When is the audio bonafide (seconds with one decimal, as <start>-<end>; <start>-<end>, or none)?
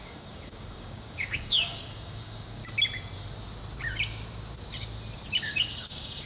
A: 2.6-5.4